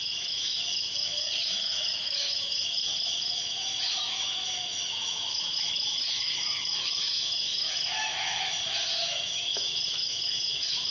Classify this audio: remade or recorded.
remade